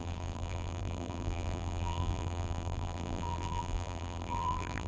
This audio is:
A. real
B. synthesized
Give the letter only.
B